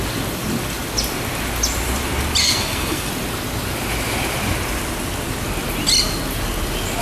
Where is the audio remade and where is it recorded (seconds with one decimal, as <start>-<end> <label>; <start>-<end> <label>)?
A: 0.0-2.4 recorded; 2.4-3.1 remade; 3.1-7.0 recorded